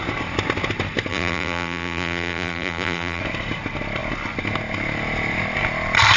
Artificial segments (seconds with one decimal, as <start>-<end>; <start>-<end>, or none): 1.1-3.2